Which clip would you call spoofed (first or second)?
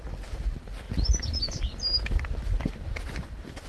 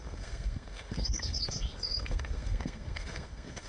second